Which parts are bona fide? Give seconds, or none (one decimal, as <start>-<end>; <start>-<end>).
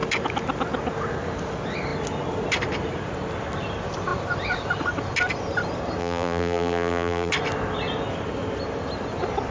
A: 0.0-6.0; 7.3-9.5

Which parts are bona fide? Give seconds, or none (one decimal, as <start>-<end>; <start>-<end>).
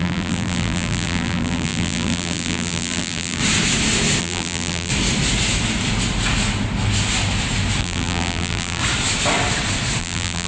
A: 3.4-4.2; 4.9-7.8; 8.8-10.0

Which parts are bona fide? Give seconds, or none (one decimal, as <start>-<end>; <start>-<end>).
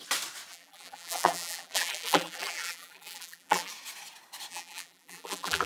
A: 0.0-0.5; 3.7-4.5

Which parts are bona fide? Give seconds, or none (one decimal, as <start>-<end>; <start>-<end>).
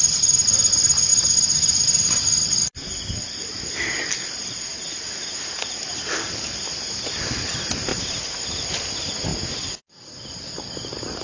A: 0.0-7.9; 8.7-11.2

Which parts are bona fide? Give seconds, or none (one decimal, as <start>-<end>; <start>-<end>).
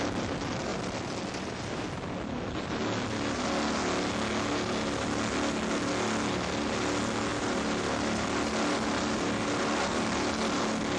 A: 0.0-7.3; 10.6-11.0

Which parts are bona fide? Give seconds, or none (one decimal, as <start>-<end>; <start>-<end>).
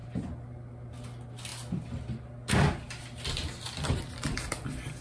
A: 0.0-5.0